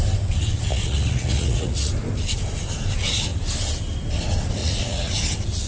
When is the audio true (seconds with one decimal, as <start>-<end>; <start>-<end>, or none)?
0.0-0.7; 1.9-4.6; 5.1-5.7